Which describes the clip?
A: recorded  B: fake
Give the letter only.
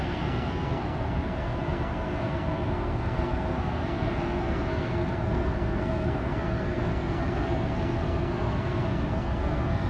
B